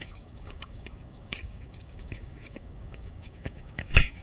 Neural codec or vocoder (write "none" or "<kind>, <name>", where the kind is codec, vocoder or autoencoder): codec, DAC